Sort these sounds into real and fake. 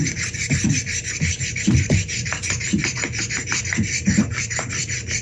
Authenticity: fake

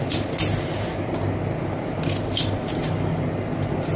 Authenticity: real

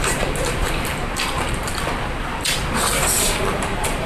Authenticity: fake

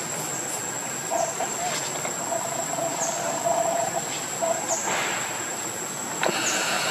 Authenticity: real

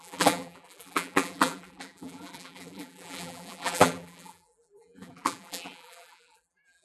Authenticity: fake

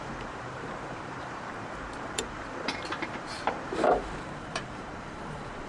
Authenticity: fake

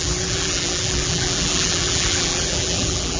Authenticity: fake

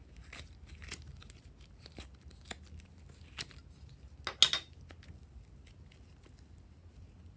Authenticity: real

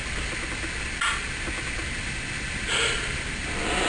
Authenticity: real